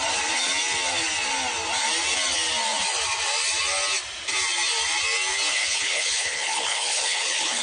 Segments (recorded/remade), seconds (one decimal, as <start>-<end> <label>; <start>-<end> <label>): 0.0-5.5 recorded; 5.5-7.6 remade